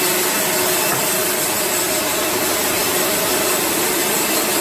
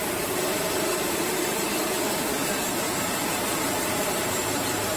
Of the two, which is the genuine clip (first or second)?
first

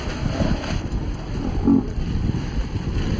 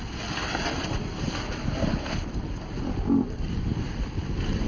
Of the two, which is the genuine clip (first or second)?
second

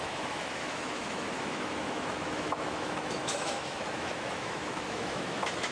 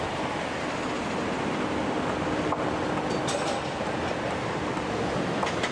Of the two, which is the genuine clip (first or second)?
second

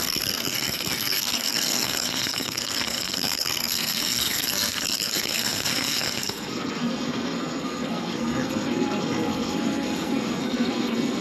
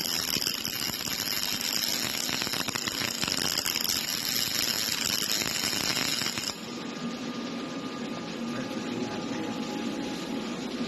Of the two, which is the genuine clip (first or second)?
second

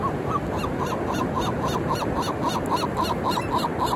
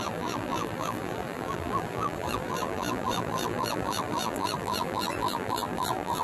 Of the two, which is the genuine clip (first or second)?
first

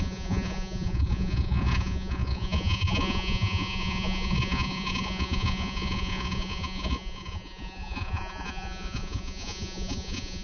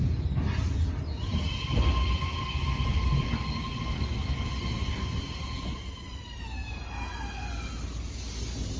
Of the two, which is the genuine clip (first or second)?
second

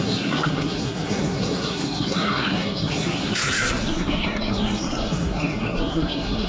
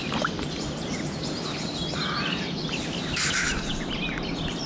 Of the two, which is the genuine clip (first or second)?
second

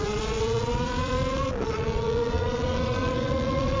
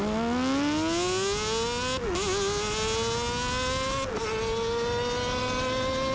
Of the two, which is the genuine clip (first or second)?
second